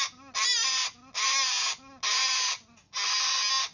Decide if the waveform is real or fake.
real